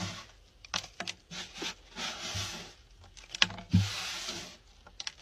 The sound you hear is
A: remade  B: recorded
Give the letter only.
B